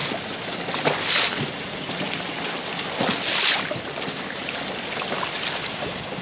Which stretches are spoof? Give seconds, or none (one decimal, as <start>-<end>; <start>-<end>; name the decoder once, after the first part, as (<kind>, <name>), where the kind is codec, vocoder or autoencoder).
none